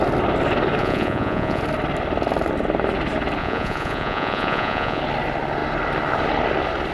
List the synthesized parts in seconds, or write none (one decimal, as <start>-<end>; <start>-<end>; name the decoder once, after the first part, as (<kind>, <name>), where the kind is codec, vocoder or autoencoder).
0.8-1.6 (vocoder, Vocos); 3.4-5.0